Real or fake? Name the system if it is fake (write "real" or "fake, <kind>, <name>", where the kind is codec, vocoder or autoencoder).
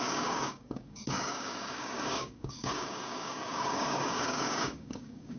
fake, codec, DAC